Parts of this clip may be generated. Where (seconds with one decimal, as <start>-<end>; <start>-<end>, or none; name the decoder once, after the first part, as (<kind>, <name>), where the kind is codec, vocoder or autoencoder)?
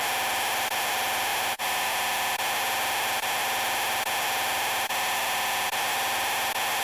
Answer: 1.3-1.9 (vocoder, BigVGAN v2)